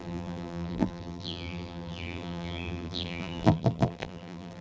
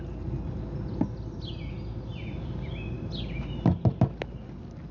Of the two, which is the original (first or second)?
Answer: second